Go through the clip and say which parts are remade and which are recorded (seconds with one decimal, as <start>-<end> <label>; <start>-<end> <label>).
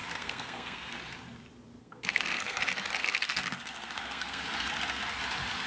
0.0-1.0 remade; 1.0-1.8 recorded; 1.8-2.6 remade; 2.6-3.0 recorded; 3.0-4.4 remade; 4.4-5.7 recorded